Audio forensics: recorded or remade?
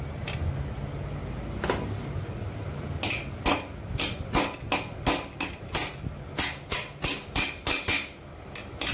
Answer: recorded